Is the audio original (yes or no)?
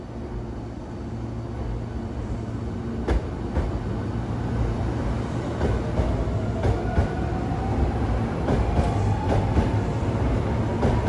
yes